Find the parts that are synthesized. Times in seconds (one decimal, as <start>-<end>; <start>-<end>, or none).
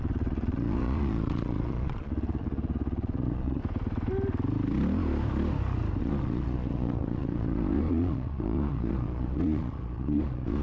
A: 0.0-3.6; 6.0-10.6